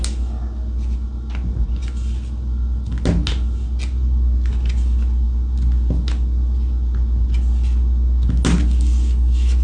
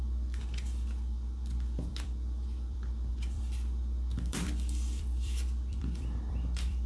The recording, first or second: first